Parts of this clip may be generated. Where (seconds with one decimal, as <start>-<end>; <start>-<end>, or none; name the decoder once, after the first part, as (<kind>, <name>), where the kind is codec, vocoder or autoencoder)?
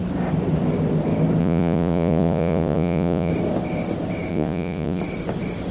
1.4-3.3 (vocoder, Vocos); 4.3-5.0